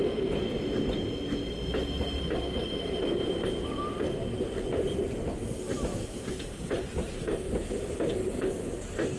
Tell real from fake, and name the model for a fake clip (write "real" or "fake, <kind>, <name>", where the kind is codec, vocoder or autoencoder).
real